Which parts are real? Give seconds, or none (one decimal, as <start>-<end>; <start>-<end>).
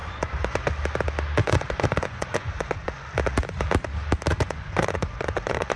0.7-1.4; 3.1-4.3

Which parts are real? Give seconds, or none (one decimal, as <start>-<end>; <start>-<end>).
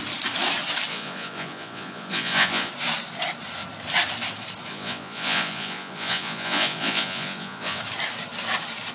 0.0-0.9; 2.7-4.7; 7.8-8.9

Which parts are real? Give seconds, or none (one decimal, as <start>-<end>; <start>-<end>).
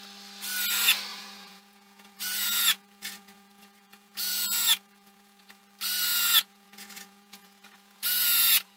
0.0-1.1; 5.6-6.1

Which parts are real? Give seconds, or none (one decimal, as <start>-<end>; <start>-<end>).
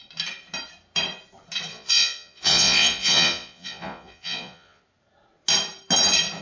0.0-1.7; 4.8-6.4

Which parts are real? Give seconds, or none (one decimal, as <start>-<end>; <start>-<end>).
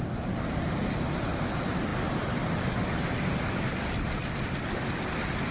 0.0-5.5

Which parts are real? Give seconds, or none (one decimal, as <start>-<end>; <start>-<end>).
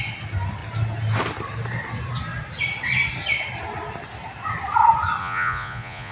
0.0-5.2